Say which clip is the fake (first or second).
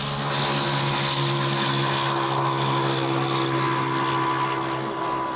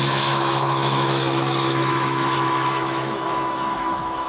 second